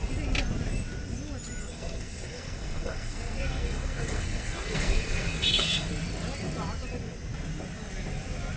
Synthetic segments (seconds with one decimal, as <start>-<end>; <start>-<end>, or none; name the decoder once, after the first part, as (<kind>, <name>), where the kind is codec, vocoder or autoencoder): 1.6-5.9 (codec, SNAC)